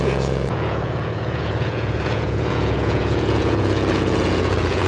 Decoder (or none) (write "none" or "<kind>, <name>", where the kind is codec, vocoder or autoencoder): vocoder, Vocos